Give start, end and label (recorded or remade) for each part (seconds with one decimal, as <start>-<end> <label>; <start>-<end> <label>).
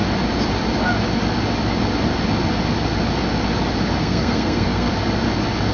0.0-4.0 recorded; 4.0-4.9 remade; 4.9-5.7 recorded